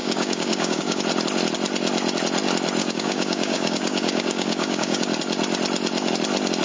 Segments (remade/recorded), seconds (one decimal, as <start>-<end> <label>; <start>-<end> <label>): 0.0-1.0 remade; 1.0-2.8 recorded; 2.8-5.0 remade; 5.0-6.6 recorded